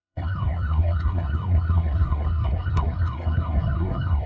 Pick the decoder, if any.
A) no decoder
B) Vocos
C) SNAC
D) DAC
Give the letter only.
C